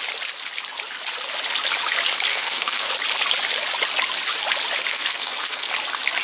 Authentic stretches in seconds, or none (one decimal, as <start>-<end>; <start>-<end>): 0.0-2.3; 2.9-4.9; 5.7-6.2

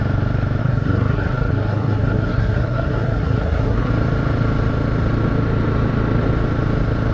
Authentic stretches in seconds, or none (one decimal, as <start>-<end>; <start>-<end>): 0.0-0.6; 3.9-7.1

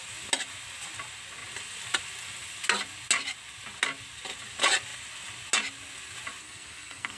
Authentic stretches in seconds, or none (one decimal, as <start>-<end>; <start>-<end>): 0.0-6.4

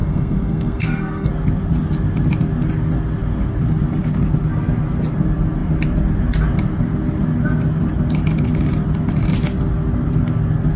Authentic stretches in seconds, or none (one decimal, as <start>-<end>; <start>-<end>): 1.3-10.8

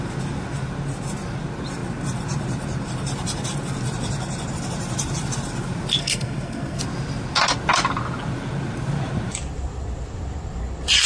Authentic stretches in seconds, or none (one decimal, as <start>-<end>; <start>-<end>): 0.0-6.0; 6.8-11.1